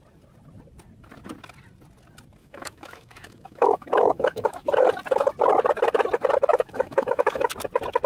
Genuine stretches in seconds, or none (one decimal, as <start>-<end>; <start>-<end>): 0.0-2.4; 4.7-6.5; 7.5-8.1